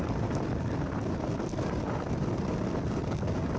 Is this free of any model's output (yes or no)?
yes